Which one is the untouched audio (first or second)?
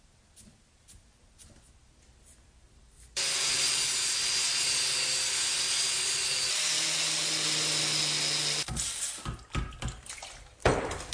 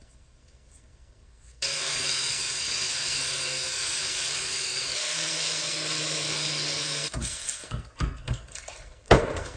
first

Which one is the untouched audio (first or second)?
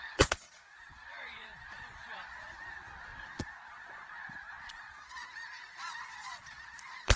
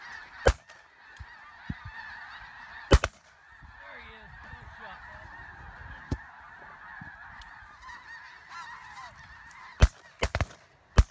second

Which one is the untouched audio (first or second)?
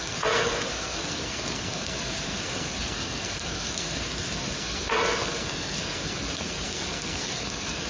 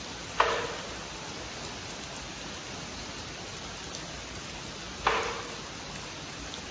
second